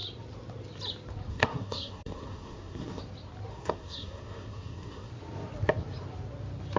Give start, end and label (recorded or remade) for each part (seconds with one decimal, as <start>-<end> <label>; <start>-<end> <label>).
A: 0.0-1.3 recorded; 1.3-3.0 remade; 3.0-3.5 recorded; 3.5-5.1 remade; 5.1-6.8 recorded